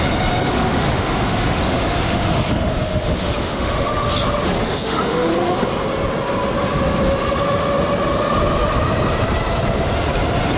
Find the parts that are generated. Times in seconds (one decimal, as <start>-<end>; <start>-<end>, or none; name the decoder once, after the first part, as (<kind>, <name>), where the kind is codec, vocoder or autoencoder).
0.5-4.1 (autoencoder, DAC-VAE); 4.6-5.3